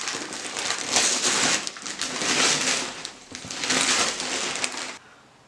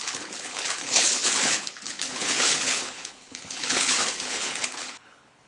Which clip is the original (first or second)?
first